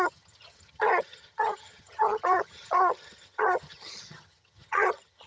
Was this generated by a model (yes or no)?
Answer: yes